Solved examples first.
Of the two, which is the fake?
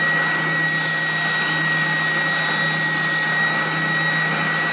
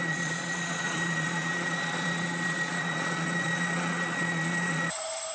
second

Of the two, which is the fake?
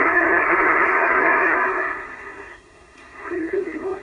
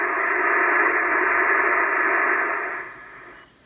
first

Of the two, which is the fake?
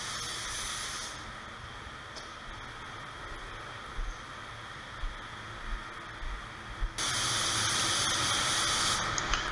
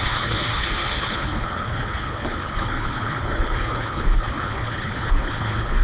second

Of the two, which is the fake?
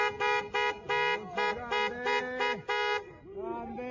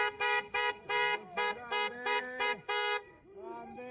second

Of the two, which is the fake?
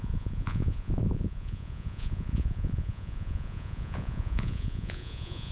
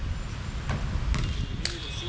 first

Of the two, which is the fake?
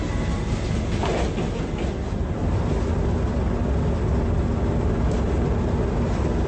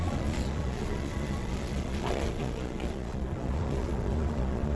second